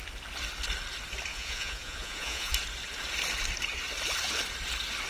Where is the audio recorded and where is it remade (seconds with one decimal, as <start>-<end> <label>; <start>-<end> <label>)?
0.0-1.3 recorded; 1.3-2.5 remade; 2.5-5.1 recorded